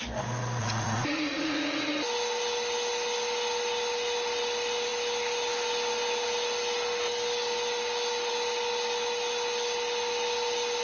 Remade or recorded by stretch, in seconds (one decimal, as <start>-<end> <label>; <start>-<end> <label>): 0.0-0.6 recorded; 0.6-1.9 remade; 1.9-10.8 recorded